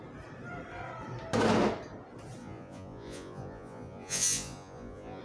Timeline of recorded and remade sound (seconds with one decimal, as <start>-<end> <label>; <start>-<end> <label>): 0.0-2.4 recorded; 2.4-5.2 remade